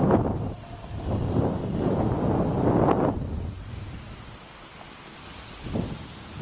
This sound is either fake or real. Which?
real